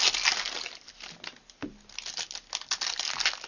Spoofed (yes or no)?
no